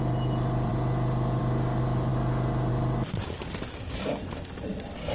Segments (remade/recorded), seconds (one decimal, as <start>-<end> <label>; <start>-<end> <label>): 0.0-5.1 recorded